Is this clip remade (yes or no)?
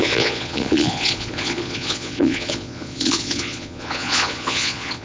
yes